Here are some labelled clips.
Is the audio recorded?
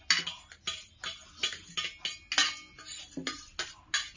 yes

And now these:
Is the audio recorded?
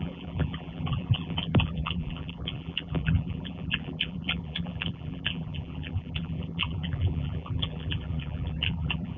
no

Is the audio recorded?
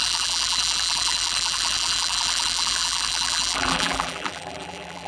no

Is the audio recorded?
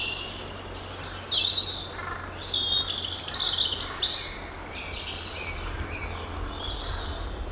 yes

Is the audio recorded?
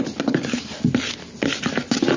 yes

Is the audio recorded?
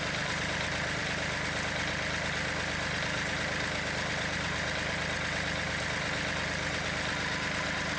yes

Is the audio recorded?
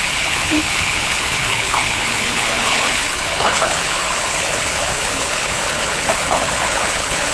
no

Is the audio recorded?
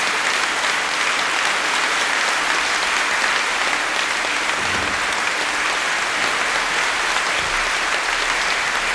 yes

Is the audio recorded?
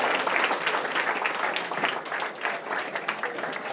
yes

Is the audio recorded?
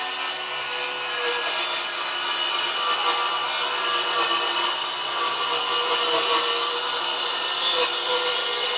yes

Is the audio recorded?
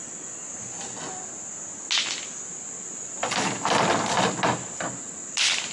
yes